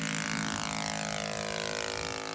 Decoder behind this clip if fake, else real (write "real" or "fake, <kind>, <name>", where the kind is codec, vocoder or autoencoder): real